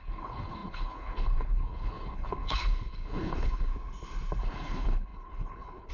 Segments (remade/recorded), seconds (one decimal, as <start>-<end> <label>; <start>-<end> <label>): 0.0-3.7 remade; 3.7-4.4 recorded; 4.4-5.9 remade